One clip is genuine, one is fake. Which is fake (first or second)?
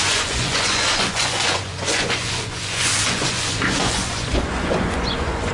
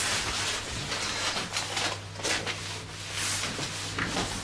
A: first